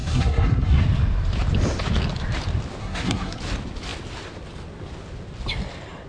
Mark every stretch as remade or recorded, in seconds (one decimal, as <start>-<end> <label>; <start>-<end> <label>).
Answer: 0.0-0.8 remade; 0.8-2.8 recorded; 2.8-3.4 remade; 3.4-6.1 recorded